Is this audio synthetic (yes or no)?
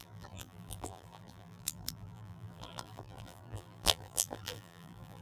yes